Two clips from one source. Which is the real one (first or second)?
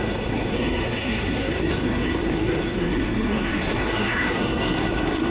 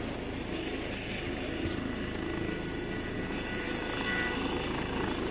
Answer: second